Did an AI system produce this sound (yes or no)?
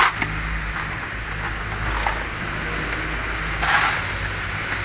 no